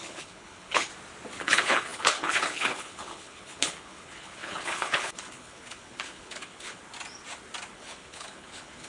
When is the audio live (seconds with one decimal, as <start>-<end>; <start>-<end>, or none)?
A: 0.9-1.4; 6.8-7.7